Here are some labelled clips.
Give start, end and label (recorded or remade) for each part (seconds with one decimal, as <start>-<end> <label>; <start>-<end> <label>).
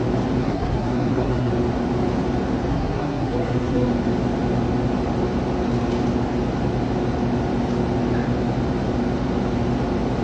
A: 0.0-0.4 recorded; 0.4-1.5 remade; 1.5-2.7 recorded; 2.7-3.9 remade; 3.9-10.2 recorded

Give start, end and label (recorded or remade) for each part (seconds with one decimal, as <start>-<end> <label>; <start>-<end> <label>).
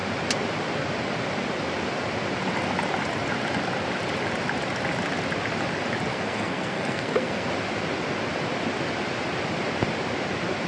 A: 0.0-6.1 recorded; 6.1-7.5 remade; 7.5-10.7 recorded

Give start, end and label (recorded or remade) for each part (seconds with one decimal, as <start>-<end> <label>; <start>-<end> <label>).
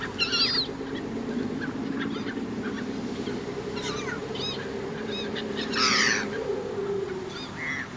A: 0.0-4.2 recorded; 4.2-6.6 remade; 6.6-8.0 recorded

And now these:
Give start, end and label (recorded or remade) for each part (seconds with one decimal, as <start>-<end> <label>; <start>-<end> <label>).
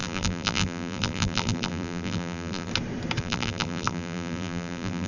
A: 0.0-2.7 remade; 2.7-3.2 recorded; 3.2-5.1 remade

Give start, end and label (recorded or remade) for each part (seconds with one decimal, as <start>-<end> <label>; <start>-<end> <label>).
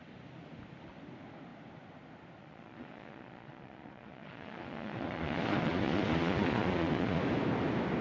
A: 0.0-2.4 recorded; 2.4-7.2 remade; 7.2-8.0 recorded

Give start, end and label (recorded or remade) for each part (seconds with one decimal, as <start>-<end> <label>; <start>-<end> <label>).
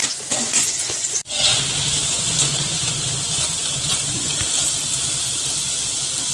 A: 0.0-1.6 remade; 1.6-2.0 recorded; 2.0-4.4 remade; 4.4-6.3 recorded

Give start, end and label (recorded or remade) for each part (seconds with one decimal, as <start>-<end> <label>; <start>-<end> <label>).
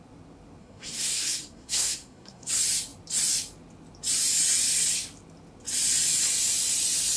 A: 0.0-0.6 recorded; 0.6-2.5 remade; 2.5-7.2 recorded